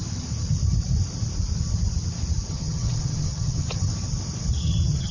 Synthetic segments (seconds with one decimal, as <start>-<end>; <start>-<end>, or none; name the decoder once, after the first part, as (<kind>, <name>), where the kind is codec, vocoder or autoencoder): 2.5-3.9 (vocoder, HiFi-GAN); 4.6-5.1